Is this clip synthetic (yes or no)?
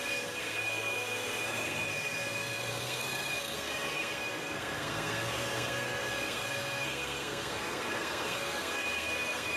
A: yes